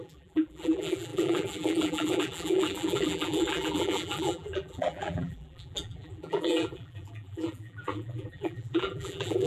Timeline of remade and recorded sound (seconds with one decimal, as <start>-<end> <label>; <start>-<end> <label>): 0.0-9.5 remade